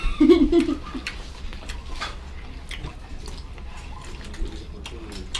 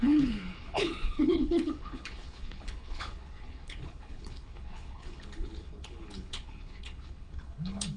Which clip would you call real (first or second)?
first